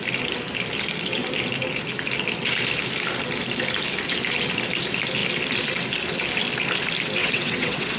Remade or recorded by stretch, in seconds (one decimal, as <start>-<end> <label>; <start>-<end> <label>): 0.0-7.2 recorded; 7.2-8.0 remade